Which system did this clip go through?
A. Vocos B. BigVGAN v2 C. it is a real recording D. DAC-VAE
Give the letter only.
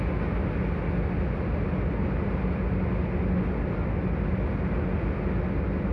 C